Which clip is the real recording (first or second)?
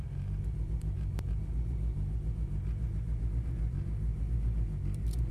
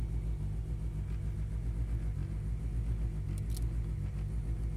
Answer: second